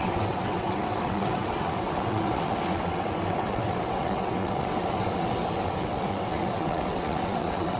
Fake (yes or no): yes